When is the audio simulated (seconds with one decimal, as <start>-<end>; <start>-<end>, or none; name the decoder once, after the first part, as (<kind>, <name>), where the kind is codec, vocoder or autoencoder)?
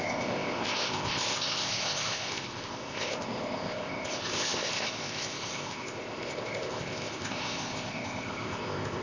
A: 0.0-9.0 (codec, ZipCodec)